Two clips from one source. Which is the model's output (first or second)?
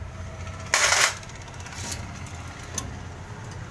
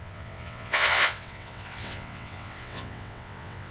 second